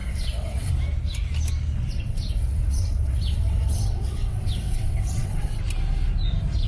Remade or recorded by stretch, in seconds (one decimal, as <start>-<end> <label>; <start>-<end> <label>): 0.0-0.7 remade; 0.7-1.9 recorded; 1.9-5.6 remade; 5.6-6.7 recorded

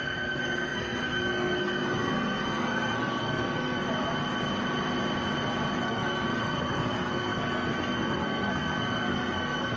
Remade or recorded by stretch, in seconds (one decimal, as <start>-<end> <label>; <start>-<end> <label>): 0.0-3.8 remade; 3.8-5.8 recorded; 5.8-9.8 remade

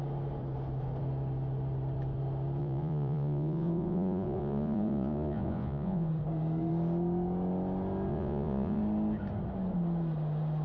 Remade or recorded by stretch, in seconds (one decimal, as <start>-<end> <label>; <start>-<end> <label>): 0.0-2.6 recorded; 2.6-6.1 remade; 6.1-8.1 recorded; 8.1-8.8 remade; 8.8-10.6 recorded

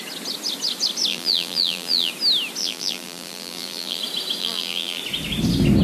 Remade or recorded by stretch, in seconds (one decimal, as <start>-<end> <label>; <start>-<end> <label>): 0.0-1.1 recorded; 1.1-2.1 remade; 2.1-2.6 recorded; 2.6-4.0 remade; 4.0-4.4 recorded; 4.4-5.0 remade; 5.0-5.8 recorded